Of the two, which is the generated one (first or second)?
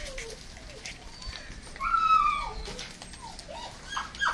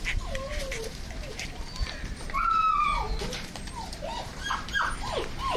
second